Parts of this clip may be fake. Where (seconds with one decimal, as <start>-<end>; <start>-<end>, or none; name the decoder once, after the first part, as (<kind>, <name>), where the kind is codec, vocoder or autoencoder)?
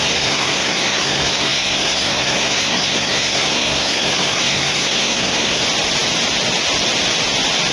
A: 0.0-5.6 (codec, SNAC)